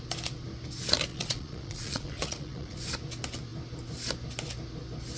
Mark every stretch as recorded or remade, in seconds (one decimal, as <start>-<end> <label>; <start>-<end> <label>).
0.0-1.1 recorded; 1.1-2.8 remade; 2.8-5.2 recorded